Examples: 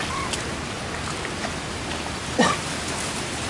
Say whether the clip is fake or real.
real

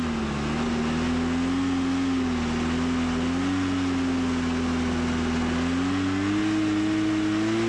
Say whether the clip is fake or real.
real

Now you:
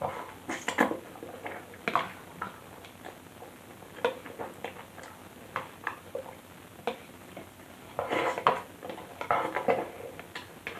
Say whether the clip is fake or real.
real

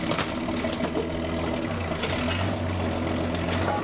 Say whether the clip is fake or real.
real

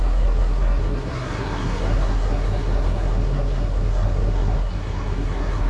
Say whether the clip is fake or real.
fake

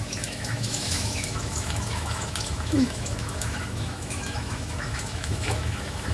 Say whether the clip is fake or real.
fake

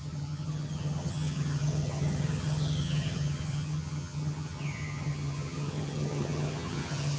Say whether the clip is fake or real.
fake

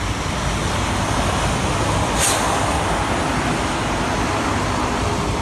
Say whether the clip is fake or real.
real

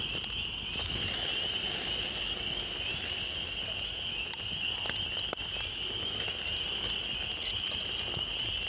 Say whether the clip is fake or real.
real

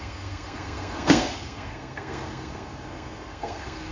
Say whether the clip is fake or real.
fake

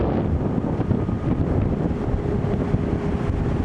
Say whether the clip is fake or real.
real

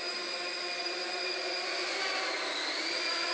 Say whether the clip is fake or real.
real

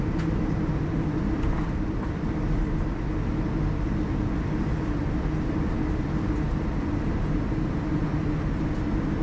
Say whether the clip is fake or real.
real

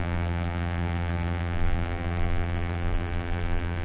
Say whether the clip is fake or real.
fake